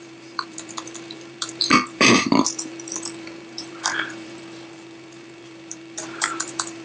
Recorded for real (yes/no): no